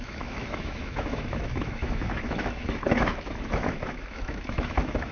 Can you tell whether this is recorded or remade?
remade